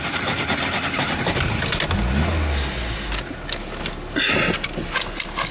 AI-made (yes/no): no